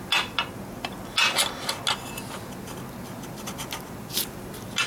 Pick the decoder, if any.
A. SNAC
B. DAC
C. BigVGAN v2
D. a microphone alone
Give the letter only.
D